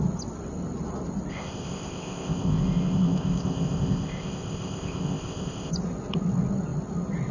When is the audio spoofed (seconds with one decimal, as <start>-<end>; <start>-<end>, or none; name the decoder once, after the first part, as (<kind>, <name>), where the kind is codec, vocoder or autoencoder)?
1.3-5.7 (codec, ZipCodec)